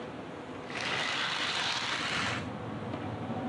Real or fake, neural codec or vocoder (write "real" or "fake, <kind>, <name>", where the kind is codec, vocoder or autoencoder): real